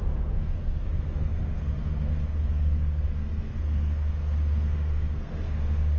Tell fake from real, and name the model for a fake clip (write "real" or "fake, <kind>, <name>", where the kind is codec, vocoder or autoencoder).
fake, codec, SNAC